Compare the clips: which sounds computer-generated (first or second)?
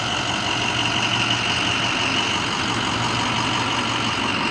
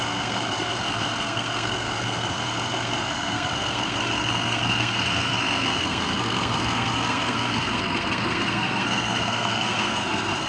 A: second